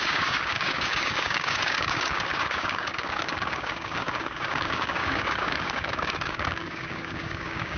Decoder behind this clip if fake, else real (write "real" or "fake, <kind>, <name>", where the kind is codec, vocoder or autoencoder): fake, codec, DAC